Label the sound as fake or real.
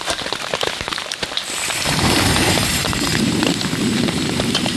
fake